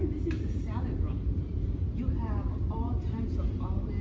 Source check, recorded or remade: remade